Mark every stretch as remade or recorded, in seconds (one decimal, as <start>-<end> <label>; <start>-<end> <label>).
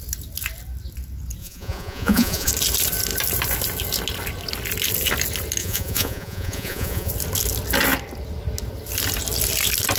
0.0-1.4 recorded; 1.4-2.5 remade; 2.5-5.6 recorded; 5.6-7.1 remade; 7.1-10.0 recorded